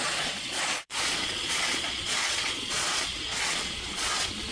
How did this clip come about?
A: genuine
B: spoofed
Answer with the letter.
B